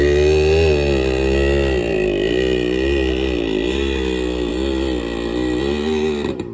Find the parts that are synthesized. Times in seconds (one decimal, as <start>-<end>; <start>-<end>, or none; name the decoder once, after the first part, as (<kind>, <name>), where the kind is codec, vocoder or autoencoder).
none